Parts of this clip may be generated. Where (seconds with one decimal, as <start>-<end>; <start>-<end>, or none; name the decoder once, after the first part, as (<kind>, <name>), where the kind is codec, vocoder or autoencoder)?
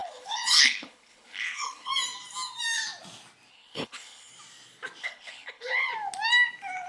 0.0-1.9 (codec, HILCodec); 3.5-4.3; 5.0-5.9